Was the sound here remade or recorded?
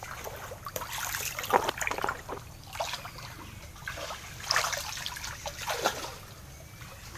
recorded